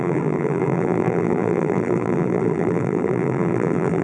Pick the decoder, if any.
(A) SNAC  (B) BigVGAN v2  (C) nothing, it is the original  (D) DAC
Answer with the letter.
B